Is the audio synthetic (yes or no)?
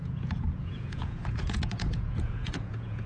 yes